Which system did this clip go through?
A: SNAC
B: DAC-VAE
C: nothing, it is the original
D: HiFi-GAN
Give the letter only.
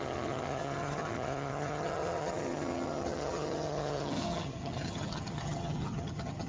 D